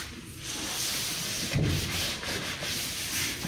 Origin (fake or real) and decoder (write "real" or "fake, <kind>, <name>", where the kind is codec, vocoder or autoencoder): real